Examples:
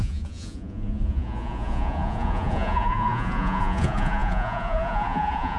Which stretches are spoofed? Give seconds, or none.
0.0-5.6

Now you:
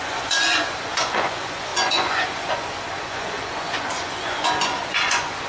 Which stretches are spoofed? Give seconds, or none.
0.0-5.5

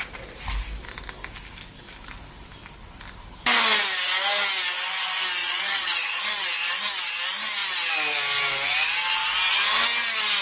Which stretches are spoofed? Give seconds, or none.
5.4-6.2

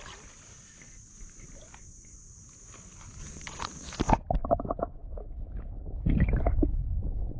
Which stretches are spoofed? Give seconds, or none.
3.2-4.0

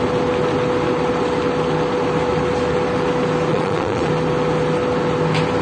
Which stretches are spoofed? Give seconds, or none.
3.5-4.1

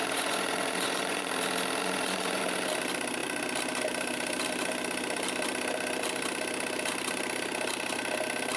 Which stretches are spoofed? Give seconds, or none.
0.0-1.3; 1.8-2.4